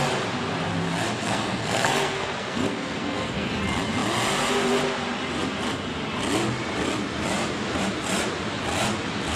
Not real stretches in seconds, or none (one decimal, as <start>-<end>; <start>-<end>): 1.2-3.5